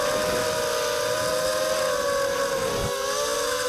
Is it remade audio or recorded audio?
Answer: recorded